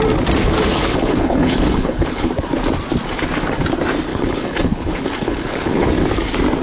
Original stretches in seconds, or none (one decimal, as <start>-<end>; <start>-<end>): 0.0-0.7; 2.3-4.1; 5.9-6.6

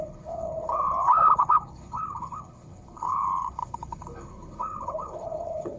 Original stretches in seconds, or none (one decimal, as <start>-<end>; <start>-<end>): none

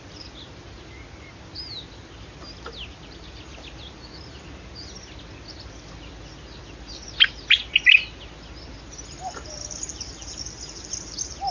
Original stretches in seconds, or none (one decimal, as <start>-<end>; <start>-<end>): 0.0-11.5

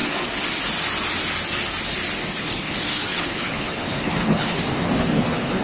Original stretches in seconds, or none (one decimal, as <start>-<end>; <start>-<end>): 0.0-2.2